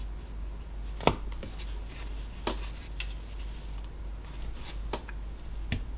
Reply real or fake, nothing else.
real